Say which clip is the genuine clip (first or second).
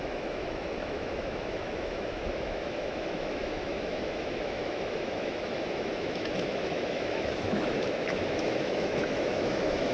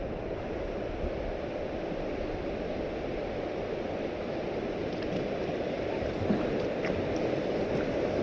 second